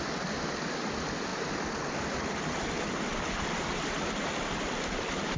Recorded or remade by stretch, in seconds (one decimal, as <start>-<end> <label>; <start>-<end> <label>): 0.0-5.4 recorded